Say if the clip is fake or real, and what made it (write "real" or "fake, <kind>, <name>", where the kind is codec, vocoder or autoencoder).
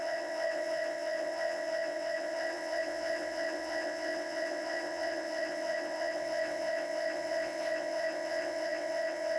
fake, vocoder, WaveNeXt